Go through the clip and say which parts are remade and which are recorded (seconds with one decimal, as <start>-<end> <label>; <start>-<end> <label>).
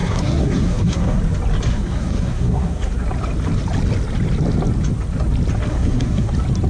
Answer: 0.0-1.2 remade; 1.2-1.7 recorded; 1.7-2.9 remade; 2.9-5.7 recorded; 5.7-6.3 remade; 6.3-6.7 recorded